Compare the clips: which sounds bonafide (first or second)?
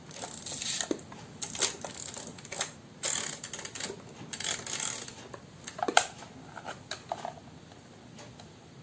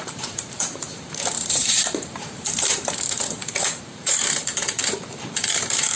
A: first